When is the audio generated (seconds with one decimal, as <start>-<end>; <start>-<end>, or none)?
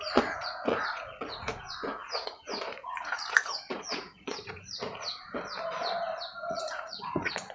0.0-5.1; 6.5-7.5